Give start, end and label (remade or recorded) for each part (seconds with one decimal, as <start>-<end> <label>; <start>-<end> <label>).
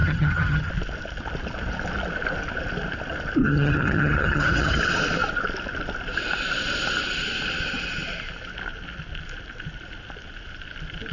0.0-0.7 remade; 0.7-3.4 recorded; 3.4-4.8 remade; 4.8-11.1 recorded